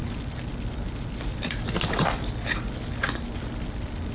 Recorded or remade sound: recorded